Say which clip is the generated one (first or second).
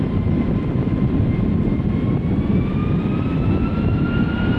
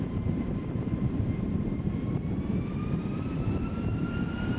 second